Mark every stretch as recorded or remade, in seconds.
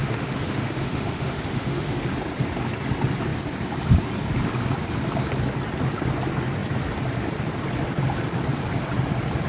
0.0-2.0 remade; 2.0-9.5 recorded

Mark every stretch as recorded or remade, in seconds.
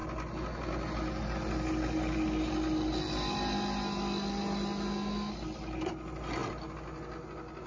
0.0-7.7 recorded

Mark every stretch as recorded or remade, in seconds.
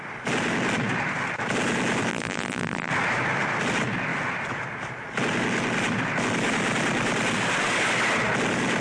0.0-2.1 recorded; 2.1-2.9 remade; 2.9-8.8 recorded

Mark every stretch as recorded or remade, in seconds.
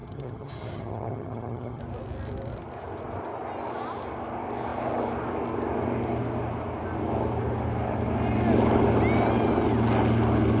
0.0-1.8 remade; 1.8-10.6 recorded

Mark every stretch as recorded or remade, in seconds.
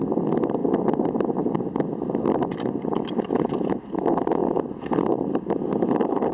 0.0-6.3 recorded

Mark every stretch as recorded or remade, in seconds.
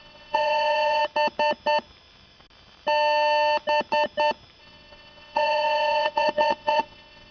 0.0-1.0 remade; 1.0-4.6 recorded; 4.6-7.3 remade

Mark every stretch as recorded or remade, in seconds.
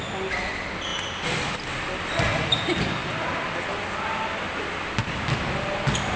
0.0-6.2 recorded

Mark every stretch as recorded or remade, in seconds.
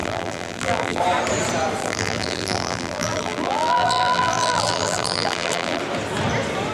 0.0-1.0 remade; 1.0-1.8 recorded; 1.8-5.8 remade; 5.8-6.7 recorded